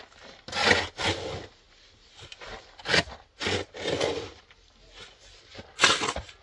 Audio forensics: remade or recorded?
recorded